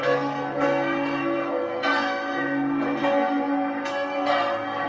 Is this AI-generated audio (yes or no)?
yes